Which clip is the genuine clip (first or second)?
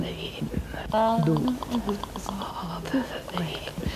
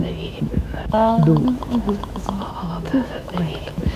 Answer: first